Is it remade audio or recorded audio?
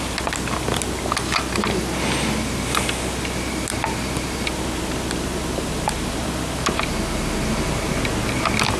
recorded